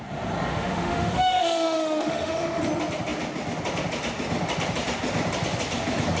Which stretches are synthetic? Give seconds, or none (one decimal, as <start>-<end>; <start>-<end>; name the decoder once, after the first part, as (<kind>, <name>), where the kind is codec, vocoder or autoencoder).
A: 0.5-2.6 (autoencoder, DAC-VAE)